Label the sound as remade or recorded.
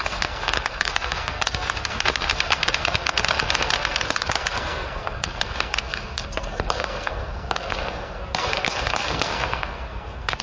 remade